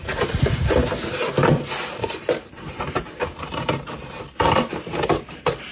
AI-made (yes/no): yes